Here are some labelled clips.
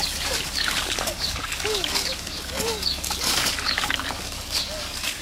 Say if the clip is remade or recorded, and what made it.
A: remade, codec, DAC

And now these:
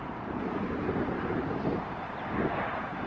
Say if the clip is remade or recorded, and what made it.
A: recorded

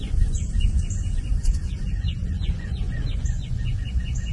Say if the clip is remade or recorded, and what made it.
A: remade, vocoder, Vocos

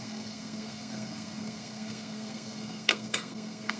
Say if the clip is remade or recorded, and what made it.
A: remade, codec, SNAC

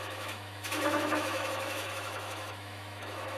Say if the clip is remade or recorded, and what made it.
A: remade, autoencoder, DAC-VAE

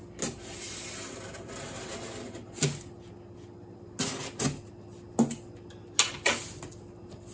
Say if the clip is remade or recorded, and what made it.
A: recorded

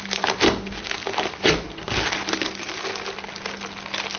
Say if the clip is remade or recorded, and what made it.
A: recorded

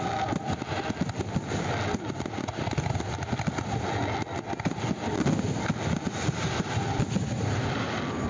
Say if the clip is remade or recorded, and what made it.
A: recorded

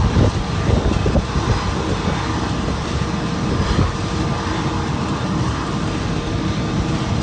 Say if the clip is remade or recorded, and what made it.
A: recorded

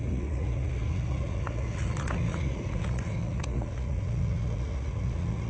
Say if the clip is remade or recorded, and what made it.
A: remade, vocoder, Vocos